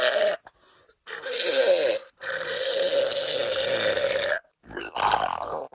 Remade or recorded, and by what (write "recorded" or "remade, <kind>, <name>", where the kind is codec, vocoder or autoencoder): recorded